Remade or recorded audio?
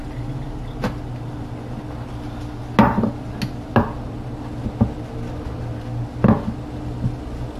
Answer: recorded